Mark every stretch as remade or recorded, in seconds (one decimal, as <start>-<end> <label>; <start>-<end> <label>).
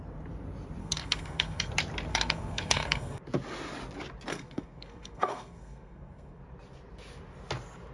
0.0-0.8 recorded; 0.8-1.7 remade; 1.7-2.1 recorded; 2.1-3.2 remade; 3.2-4.3 recorded; 4.3-6.4 remade; 6.4-7.9 recorded